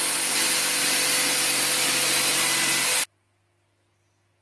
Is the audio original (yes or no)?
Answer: yes